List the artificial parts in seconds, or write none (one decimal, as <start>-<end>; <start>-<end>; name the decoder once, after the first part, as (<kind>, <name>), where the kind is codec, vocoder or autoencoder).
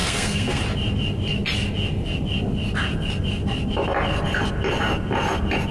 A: 0.0-0.6 (codec, SNAC)